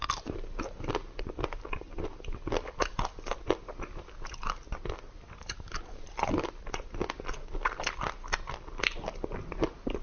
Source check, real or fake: real